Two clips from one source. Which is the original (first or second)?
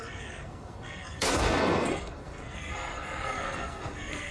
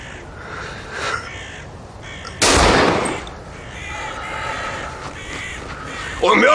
second